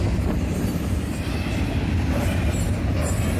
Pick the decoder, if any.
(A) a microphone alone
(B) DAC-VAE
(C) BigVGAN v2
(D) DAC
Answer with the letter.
A